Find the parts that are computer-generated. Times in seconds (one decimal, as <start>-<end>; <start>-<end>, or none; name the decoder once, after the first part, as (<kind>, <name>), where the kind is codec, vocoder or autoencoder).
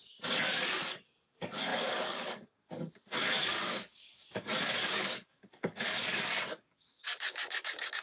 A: 0.0-8.0 (codec, DAC)